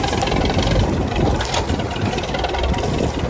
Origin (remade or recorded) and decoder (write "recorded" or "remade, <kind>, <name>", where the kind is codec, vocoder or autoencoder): recorded